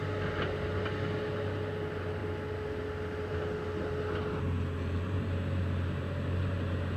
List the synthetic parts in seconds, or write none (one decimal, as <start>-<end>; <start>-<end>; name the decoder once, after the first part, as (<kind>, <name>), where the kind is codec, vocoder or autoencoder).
none